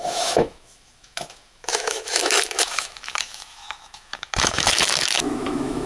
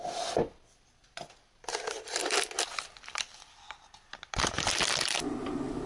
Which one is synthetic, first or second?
first